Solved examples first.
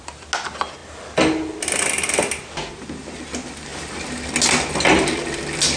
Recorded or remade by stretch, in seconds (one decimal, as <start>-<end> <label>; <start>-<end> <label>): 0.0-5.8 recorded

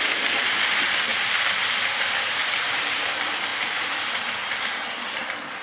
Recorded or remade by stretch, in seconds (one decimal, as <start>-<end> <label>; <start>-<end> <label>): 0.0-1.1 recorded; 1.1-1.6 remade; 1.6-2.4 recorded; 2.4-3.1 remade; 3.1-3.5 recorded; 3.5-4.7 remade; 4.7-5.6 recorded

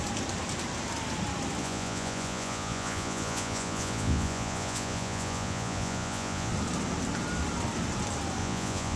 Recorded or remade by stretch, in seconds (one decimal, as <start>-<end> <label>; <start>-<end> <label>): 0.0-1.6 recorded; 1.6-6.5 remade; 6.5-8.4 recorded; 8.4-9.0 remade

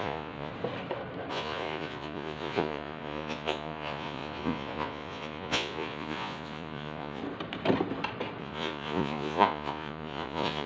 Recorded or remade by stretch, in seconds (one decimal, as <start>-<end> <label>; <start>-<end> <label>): 0.0-0.5 remade; 0.5-1.3 recorded; 1.3-7.2 remade; 7.2-8.4 recorded; 8.4-10.7 remade

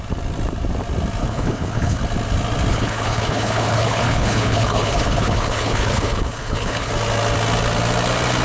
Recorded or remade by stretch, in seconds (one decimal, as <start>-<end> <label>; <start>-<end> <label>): 0.0-1.2 recorded; 1.2-2.0 remade; 2.0-2.7 recorded; 2.7-6.9 remade; 6.9-8.4 recorded